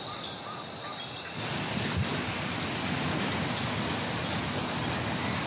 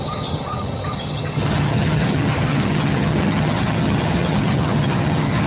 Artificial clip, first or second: second